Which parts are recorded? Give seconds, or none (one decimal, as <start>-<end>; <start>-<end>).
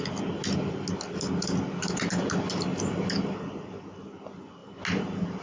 0.0-5.4